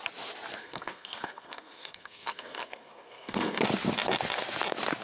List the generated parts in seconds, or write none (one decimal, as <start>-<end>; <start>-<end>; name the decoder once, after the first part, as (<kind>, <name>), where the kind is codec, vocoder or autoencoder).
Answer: 0.6-3.6 (codec, SNAC)